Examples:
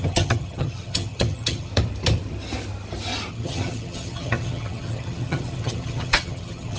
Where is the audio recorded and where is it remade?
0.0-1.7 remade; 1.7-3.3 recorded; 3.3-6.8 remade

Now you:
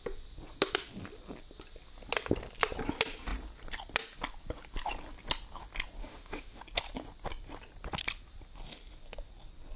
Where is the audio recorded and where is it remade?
0.0-6.0 recorded; 6.0-6.6 remade; 6.6-9.8 recorded

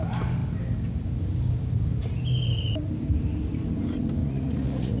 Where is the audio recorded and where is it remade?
0.0-4.2 recorded; 4.2-5.0 remade

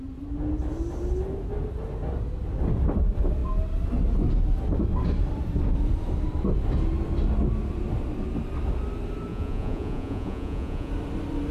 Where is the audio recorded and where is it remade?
0.0-9.3 recorded; 9.3-10.9 remade; 10.9-11.5 recorded